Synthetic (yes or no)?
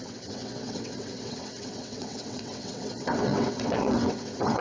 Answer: yes